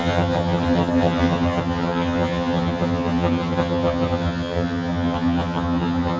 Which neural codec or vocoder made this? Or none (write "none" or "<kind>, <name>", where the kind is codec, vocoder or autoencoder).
vocoder, HiFi-GAN